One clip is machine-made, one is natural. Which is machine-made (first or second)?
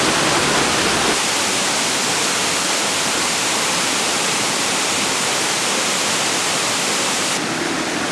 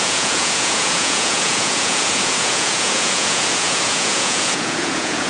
second